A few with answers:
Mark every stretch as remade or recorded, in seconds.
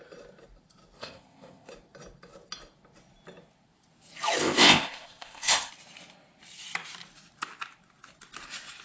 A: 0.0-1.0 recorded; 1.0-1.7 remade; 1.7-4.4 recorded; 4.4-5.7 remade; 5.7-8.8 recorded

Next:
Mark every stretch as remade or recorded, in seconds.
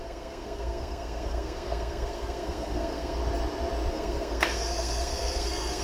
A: 0.0-3.2 remade; 3.2-3.9 recorded; 3.9-5.8 remade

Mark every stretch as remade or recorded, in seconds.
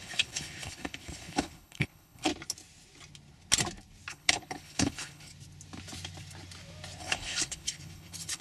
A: 0.0-2.3 remade; 2.3-4.1 recorded; 4.1-5.3 remade; 5.3-7.0 recorded; 7.0-8.4 remade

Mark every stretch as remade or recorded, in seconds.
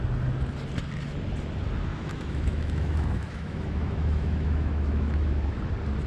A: 0.0-1.9 recorded; 1.9-5.6 remade; 5.6-6.1 recorded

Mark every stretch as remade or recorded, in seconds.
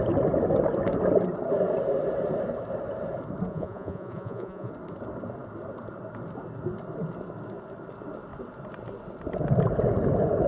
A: 0.0-3.5 recorded; 3.5-4.7 remade; 4.7-10.5 recorded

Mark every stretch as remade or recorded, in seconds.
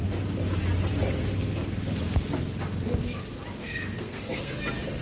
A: 0.0-3.6 recorded; 3.6-4.5 remade; 4.5-5.0 recorded